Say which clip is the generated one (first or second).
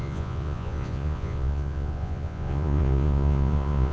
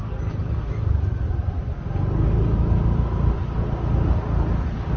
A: first